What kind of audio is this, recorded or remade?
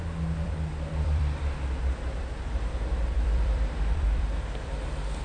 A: remade